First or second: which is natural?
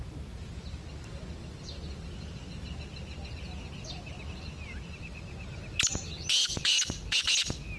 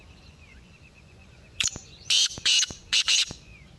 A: first